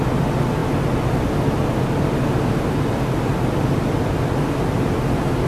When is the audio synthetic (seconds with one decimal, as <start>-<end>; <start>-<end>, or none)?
none